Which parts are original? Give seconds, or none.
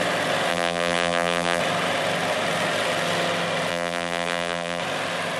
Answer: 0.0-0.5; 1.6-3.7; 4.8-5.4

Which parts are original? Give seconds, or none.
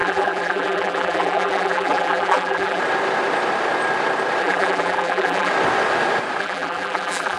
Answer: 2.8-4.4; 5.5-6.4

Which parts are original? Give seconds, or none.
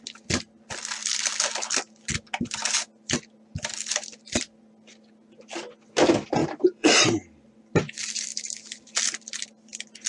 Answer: 0.0-6.4; 7.0-10.1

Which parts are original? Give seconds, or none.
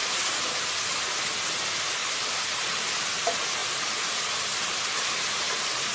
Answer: 0.0-2.0; 3.1-3.6; 4.1-5.9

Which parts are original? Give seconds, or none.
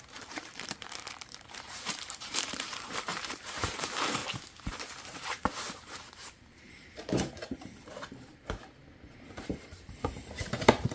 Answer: 4.2-4.8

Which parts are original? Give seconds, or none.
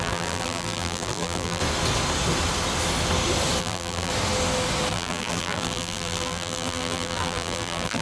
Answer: 1.6-3.6; 4.1-4.9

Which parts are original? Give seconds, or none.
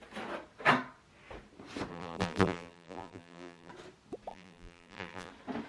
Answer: 0.0-1.9; 3.7-4.3; 5.3-5.7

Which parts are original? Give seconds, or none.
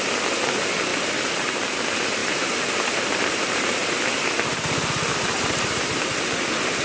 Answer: 0.0-0.9; 1.6-2.2; 4.0-5.1; 6.0-6.8